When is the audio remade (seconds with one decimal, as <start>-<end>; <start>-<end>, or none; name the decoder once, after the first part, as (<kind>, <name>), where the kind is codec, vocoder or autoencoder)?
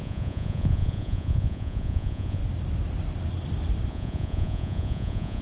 0.0-2.4 (vocoder, Vocos); 3.9-5.4